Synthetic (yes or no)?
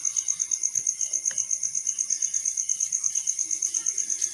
no